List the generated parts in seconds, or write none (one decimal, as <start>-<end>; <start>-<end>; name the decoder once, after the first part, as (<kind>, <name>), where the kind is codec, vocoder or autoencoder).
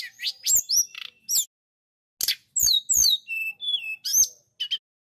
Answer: none